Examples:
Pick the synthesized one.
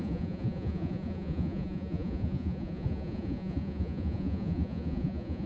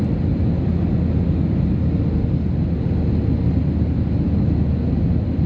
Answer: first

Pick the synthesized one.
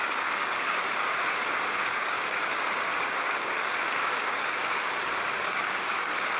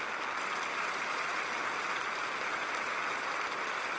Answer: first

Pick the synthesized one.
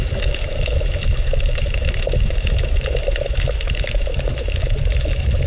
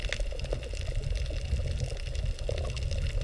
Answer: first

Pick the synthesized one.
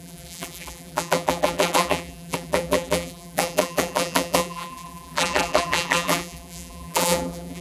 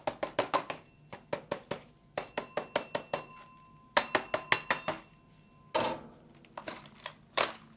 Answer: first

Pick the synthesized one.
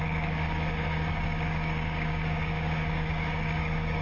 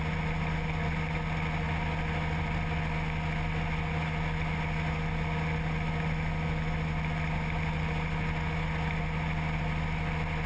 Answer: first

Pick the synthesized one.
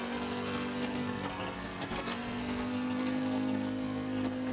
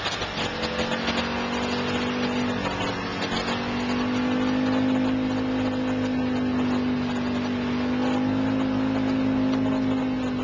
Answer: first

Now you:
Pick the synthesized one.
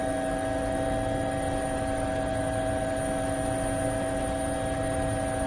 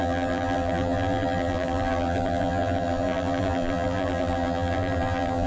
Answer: second